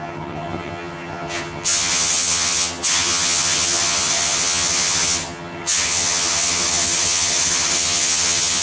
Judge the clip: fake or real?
fake